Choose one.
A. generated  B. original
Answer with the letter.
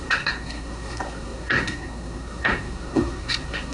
A